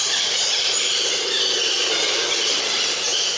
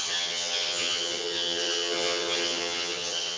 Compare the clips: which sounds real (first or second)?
first